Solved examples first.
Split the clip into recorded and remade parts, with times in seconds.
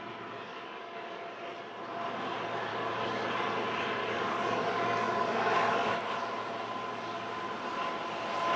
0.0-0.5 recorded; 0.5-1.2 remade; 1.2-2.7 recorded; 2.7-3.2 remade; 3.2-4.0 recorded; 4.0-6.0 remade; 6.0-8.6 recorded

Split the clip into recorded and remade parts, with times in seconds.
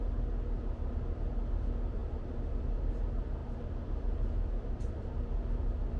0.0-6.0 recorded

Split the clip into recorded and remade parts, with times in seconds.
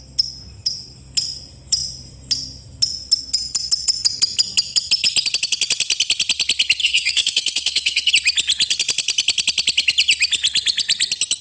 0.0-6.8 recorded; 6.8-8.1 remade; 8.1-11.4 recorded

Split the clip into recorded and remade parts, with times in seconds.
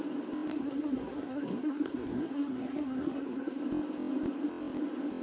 0.0-0.5 recorded; 0.5-3.6 remade; 3.6-5.2 recorded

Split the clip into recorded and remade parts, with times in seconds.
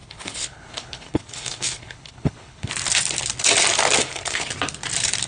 0.0-2.7 remade; 2.7-4.0 recorded; 4.0-4.5 remade; 4.5-5.3 recorded